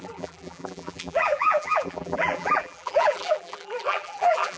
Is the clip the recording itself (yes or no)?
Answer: no